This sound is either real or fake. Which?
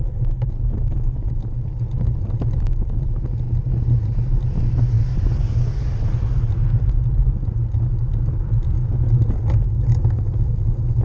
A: real